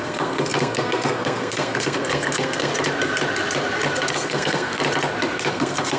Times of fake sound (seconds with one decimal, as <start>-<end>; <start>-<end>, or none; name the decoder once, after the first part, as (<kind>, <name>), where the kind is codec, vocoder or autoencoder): 0.0-2.7 (codec, SNAC); 4.1-4.8; 5.5-6.0